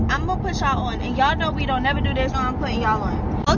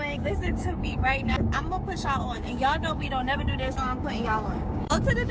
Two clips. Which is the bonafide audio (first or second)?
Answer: first